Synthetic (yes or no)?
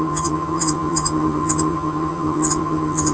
yes